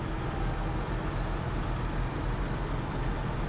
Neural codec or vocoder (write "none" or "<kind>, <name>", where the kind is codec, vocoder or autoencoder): none